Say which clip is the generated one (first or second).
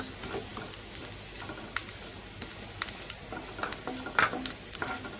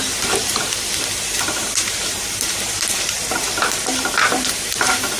second